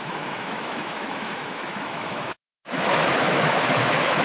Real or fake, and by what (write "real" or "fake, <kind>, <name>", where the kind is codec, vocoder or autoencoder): fake, autoencoder, DAC-VAE